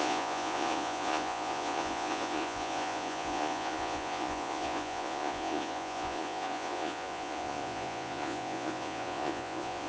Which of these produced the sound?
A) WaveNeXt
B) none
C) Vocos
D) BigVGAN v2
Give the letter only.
C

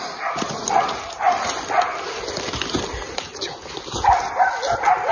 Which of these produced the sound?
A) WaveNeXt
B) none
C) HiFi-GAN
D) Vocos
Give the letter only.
B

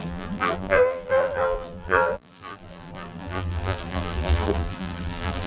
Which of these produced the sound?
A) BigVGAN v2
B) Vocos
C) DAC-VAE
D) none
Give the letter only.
A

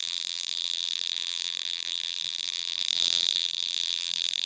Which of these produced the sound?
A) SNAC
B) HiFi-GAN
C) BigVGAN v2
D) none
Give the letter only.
C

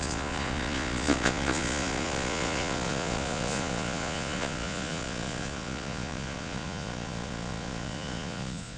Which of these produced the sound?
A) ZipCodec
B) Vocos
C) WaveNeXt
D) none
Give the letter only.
B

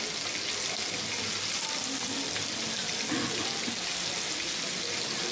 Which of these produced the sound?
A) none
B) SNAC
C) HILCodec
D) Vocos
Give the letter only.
A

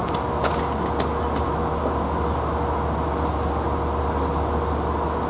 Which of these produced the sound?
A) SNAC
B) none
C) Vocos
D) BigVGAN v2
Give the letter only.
B